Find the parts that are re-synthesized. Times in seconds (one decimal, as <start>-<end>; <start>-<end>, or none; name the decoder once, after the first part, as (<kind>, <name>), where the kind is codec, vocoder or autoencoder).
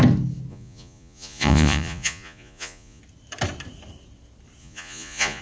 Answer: 0.5-3.0 (vocoder, Vocos); 4.6-5.4